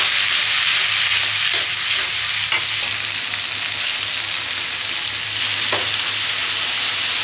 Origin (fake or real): real